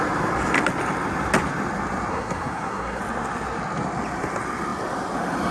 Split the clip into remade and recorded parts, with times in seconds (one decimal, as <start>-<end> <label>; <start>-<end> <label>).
0.0-2.1 recorded; 2.1-3.0 remade; 3.0-5.5 recorded

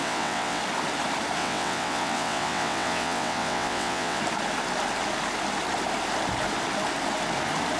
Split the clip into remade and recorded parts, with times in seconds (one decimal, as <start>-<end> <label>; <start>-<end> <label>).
0.0-0.6 remade; 0.6-1.4 recorded; 1.4-4.2 remade; 4.2-7.8 recorded